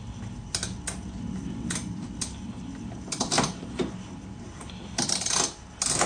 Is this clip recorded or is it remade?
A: recorded